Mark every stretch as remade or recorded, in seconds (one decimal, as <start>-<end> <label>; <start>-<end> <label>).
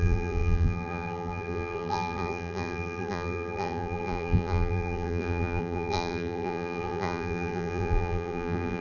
0.0-8.8 remade